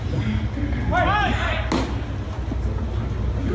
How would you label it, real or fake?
real